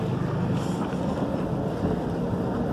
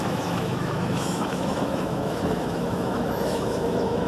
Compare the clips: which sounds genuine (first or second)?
first